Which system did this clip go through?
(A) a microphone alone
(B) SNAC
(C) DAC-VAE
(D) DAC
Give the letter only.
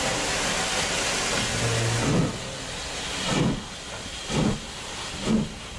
A